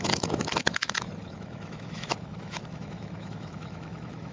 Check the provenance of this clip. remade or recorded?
remade